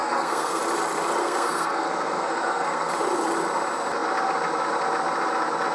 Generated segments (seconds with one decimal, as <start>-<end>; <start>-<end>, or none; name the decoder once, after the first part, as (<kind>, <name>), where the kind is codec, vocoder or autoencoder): 0.0-0.6 (codec, SNAC); 1.2-2.9